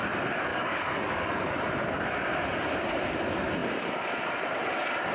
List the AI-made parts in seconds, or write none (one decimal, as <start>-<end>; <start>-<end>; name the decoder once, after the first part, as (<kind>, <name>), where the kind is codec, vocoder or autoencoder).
0.5-1.6 (codec, DAC)